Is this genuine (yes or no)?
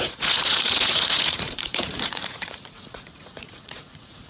no